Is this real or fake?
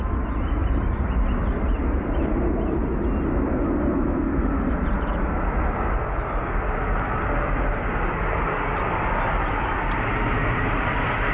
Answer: real